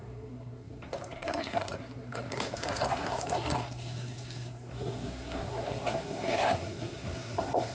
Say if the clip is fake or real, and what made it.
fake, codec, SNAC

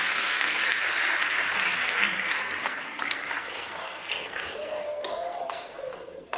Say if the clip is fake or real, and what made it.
fake, codec, SNAC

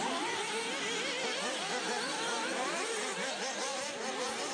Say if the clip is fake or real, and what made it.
real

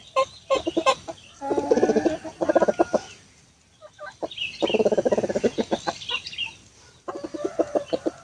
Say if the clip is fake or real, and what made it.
real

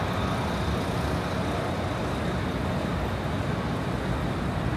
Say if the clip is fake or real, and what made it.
real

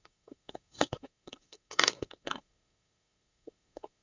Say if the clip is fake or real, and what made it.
fake, codec, SNAC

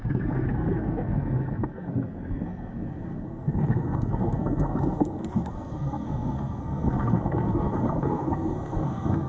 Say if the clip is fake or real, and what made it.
fake, codec, SNAC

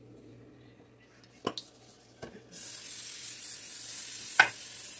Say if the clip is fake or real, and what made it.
real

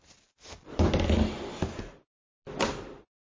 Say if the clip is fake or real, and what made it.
real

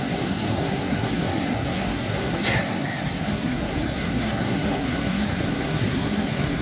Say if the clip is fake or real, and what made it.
fake, codec, SNAC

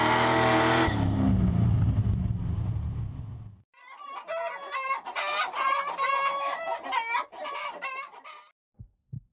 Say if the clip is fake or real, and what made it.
real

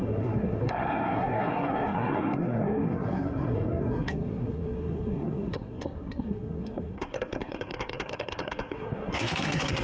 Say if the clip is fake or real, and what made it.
fake, codec, SNAC